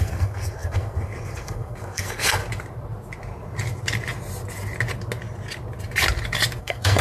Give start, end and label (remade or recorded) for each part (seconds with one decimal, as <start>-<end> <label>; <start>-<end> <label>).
0.0-2.4 remade; 2.4-6.6 recorded; 6.6-7.0 remade